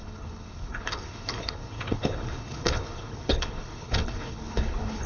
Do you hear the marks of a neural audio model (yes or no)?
yes